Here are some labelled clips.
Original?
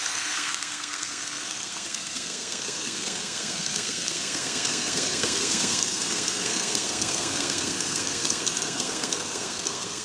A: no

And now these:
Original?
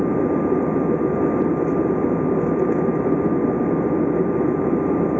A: yes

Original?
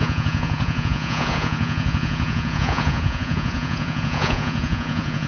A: no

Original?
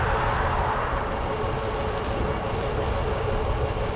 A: yes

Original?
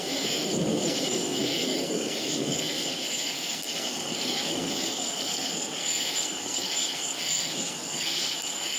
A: no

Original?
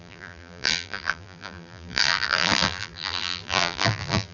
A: no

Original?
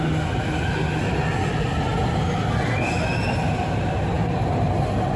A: yes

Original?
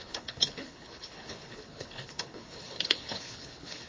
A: no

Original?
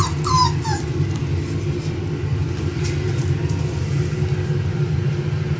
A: yes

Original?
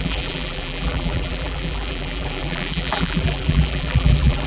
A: no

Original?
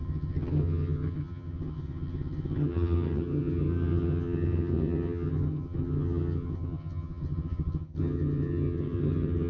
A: no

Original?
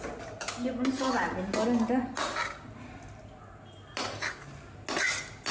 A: yes